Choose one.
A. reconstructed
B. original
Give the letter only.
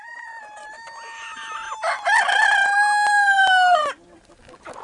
B